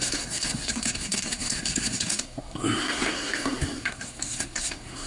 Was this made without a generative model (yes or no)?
no